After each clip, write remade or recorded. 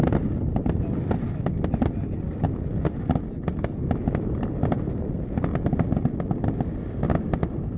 recorded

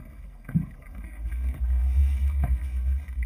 remade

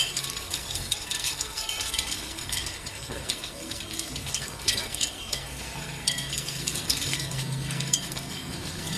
remade